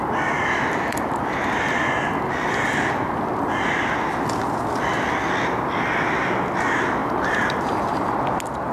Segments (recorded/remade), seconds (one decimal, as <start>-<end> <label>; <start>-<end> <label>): 0.0-7.0 recorded; 7.0-8.1 remade; 8.1-8.7 recorded